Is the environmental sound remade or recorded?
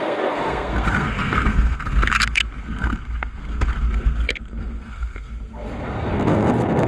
remade